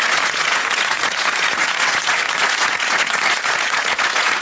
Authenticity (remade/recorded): remade